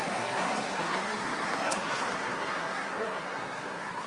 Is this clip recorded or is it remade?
remade